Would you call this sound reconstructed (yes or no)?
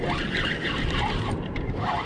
no